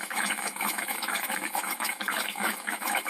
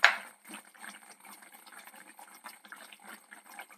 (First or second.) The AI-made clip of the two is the first